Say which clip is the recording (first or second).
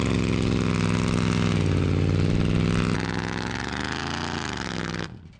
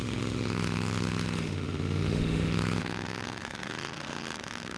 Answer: first